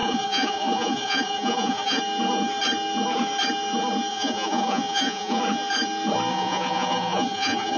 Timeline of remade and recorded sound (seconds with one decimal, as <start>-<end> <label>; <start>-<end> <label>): 0.0-2.0 remade; 2.0-4.1 recorded; 4.1-5.4 remade; 5.4-6.3 recorded; 6.3-7.8 remade